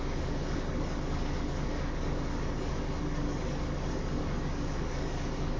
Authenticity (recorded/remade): remade